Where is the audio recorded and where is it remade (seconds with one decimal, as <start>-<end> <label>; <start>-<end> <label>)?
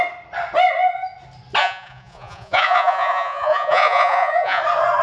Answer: 0.0-1.6 recorded; 1.6-4.6 remade; 4.6-5.0 recorded